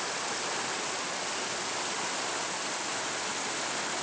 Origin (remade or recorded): recorded